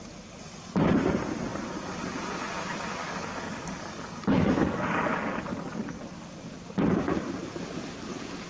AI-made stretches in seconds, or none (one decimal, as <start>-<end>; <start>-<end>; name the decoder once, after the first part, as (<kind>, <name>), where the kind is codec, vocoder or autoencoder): 3.0-6.0 (codec, DAC)